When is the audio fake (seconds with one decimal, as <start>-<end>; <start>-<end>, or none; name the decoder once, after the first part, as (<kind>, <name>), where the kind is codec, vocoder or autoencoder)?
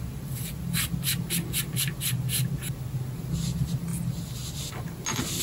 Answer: none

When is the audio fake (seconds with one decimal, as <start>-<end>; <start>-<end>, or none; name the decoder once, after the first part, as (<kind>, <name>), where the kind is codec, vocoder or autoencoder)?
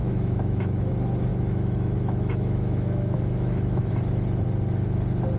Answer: 0.0-0.9 (autoencoder, DAC-VAE); 1.3-3.9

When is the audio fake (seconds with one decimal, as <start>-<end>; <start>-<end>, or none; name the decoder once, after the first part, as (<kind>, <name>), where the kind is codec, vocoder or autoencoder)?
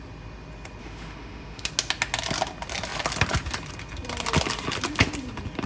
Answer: 0.8-1.7 (autoencoder, DAC-VAE)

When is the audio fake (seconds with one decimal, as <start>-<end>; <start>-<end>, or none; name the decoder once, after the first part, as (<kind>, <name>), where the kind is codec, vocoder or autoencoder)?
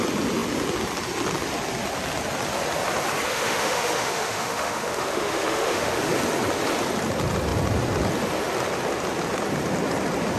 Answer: 3.3-6.1 (autoencoder, DAC-VAE)